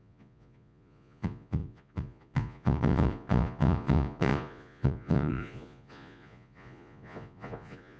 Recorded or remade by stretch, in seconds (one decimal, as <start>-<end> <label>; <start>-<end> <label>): 0.0-8.0 remade